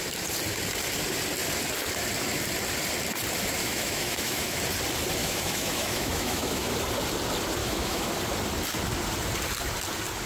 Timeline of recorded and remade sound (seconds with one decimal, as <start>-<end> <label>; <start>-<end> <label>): 0.0-3.6 recorded; 3.6-4.6 remade; 4.6-5.2 recorded; 5.2-6.7 remade; 6.7-7.6 recorded; 7.6-8.1 remade; 8.1-10.3 recorded